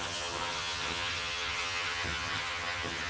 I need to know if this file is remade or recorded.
remade